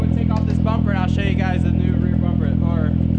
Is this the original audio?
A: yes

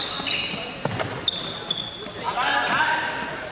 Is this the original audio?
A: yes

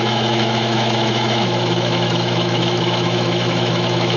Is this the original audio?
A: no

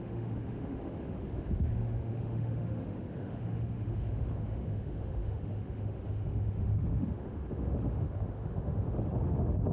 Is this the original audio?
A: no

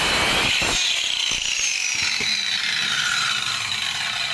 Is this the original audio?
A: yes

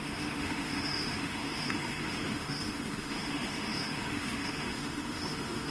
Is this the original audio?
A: no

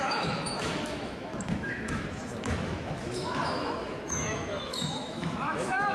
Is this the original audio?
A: no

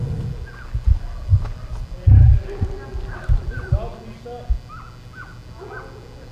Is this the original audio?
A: yes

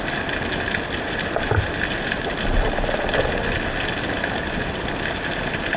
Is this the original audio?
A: yes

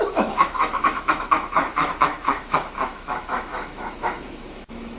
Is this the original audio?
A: no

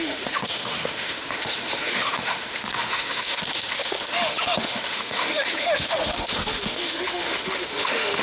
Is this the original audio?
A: no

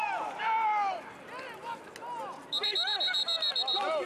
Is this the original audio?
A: yes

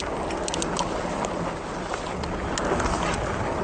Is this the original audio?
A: yes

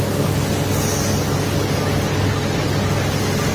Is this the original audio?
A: yes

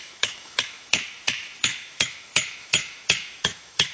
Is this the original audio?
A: no